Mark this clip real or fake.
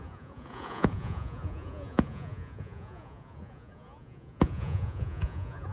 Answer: fake